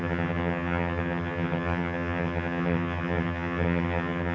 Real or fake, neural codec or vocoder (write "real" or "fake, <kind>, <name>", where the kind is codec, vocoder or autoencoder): fake, vocoder, HiFi-GAN